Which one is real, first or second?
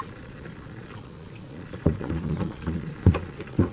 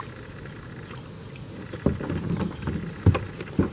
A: second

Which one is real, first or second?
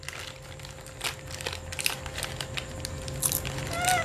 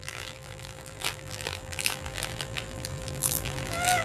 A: first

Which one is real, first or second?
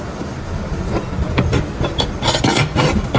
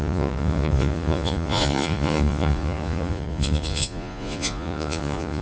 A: first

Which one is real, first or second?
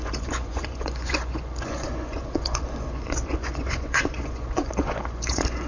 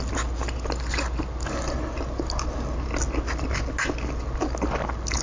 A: second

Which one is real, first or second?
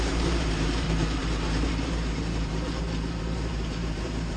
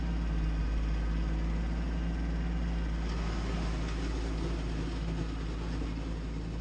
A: second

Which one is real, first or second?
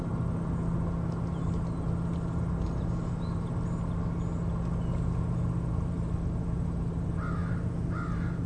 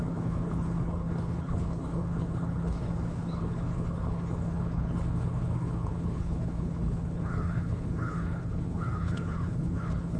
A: first